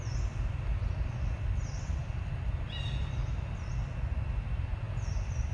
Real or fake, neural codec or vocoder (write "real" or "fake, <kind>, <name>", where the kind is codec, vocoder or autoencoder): real